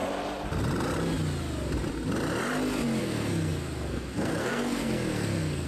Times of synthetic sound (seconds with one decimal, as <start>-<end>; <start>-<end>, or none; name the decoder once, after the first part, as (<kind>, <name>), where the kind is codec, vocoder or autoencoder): 3.0-5.7 (codec, SNAC)